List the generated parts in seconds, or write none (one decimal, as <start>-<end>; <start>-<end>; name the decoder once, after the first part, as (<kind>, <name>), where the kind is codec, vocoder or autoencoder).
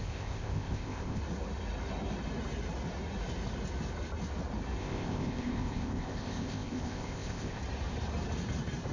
0.0-1.2 (codec, ZipCodec); 4.8-7.6